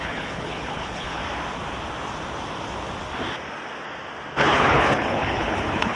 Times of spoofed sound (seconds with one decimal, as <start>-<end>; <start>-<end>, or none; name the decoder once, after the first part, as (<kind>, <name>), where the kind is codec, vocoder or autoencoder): 0.0-1.2 (codec, HILCodec); 4.4-6.0